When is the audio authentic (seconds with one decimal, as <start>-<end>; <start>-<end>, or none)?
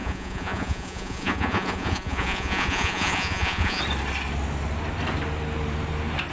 3.8-6.3